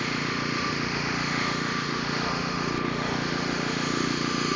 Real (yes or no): no